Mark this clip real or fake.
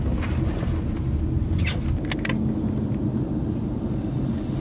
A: real